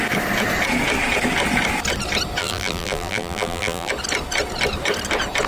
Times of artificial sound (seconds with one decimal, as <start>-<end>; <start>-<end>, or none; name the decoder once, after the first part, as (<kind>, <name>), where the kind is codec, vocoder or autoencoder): 2.4-3.9 (vocoder, BigVGAN v2)